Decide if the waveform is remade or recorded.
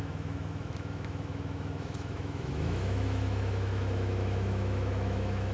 remade